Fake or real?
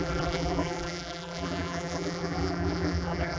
fake